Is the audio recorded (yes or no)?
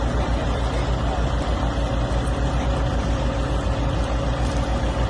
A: yes